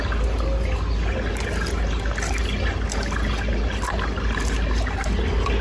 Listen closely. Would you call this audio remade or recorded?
recorded